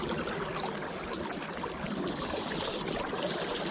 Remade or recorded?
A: recorded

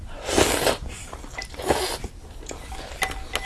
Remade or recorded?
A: recorded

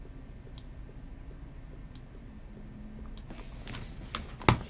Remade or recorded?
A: recorded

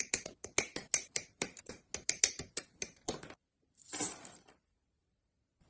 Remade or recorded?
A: remade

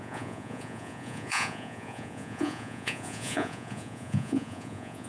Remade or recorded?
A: remade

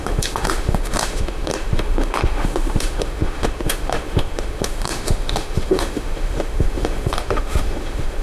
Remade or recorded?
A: remade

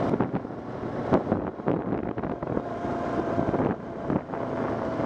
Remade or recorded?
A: recorded